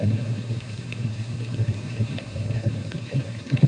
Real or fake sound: fake